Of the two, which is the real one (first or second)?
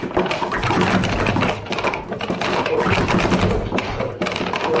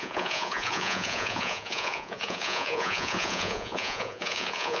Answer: first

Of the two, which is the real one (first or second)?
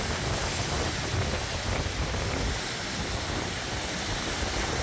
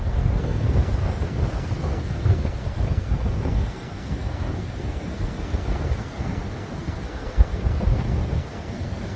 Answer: first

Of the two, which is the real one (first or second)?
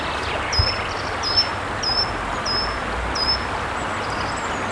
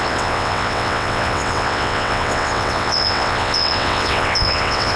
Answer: first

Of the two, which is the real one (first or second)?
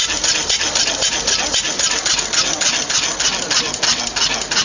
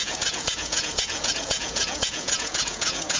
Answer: first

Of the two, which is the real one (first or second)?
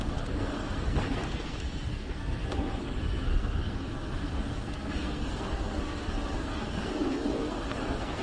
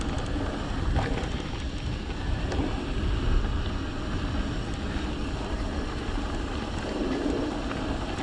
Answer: second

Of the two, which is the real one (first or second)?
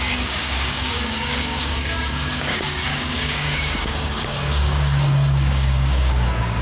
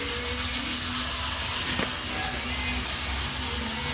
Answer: second